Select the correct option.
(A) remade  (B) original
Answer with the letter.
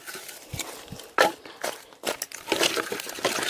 B